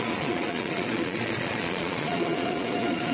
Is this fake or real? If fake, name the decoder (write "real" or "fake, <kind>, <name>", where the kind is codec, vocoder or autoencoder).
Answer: fake, vocoder, Vocos